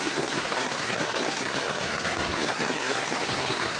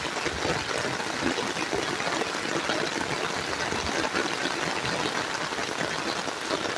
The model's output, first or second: first